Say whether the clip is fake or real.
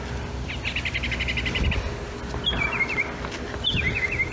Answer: real